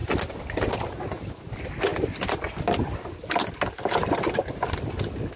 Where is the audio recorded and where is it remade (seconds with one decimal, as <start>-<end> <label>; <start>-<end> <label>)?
0.0-5.4 recorded